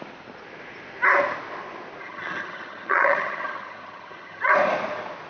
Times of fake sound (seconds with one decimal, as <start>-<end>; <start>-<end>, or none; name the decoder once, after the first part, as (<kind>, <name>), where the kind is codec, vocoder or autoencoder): 2.0-4.5 (vocoder, HiFi-GAN)